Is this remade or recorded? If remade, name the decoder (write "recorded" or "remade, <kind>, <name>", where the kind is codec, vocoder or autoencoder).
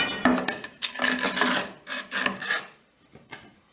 recorded